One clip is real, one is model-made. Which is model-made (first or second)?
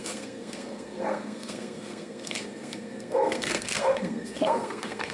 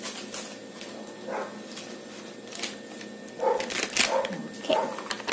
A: first